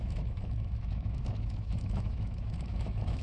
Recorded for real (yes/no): no